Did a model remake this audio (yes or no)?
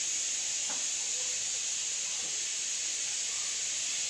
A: no